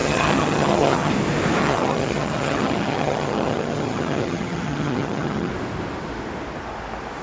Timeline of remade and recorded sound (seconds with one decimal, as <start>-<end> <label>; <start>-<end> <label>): 0.0-1.1 remade; 1.1-1.6 recorded; 1.6-5.5 remade; 5.5-7.2 recorded